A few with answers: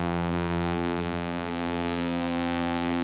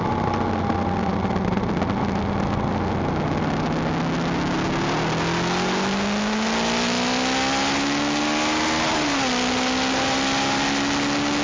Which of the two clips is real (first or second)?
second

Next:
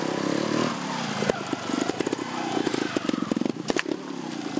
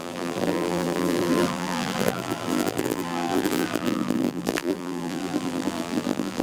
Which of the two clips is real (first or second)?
first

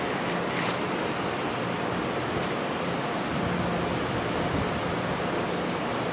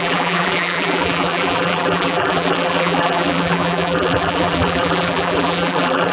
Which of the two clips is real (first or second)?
first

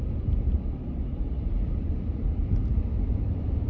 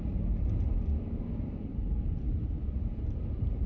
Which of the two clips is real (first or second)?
first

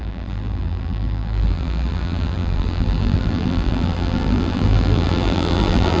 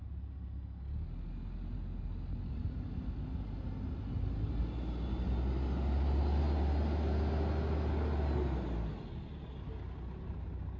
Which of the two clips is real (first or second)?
second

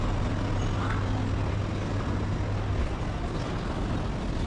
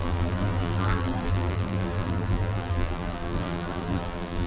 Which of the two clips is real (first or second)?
first